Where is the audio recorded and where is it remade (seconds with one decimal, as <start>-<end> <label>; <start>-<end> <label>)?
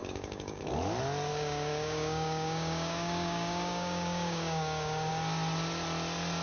0.0-0.6 remade; 0.6-1.3 recorded; 1.3-5.1 remade; 5.1-6.4 recorded